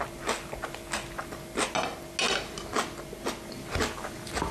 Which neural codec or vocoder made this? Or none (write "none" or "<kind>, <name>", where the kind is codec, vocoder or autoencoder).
none